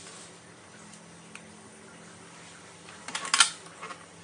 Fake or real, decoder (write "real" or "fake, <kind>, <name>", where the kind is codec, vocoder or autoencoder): real